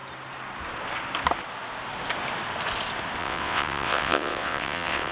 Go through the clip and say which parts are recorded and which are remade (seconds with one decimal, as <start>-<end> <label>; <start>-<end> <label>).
0.0-3.2 recorded; 3.2-5.1 remade